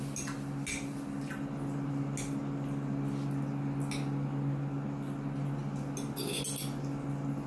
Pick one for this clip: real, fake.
real